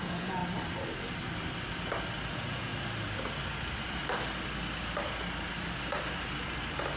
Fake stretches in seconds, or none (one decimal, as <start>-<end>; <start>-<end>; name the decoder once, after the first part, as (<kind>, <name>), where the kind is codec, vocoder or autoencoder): 0.0-0.4 (vocoder, Vocos); 2.3-2.7